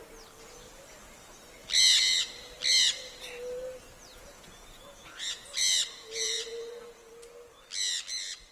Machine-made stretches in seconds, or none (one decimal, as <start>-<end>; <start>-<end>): 4.1-5.6; 6.0-7.1